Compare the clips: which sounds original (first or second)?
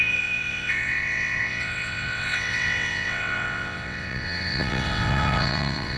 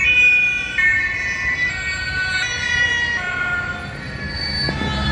second